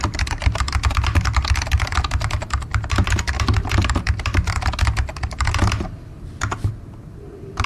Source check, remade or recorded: recorded